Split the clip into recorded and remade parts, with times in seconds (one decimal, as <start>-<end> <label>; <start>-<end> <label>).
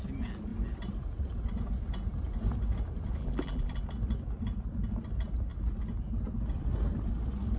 0.0-3.2 recorded; 3.2-3.8 remade; 3.8-7.6 recorded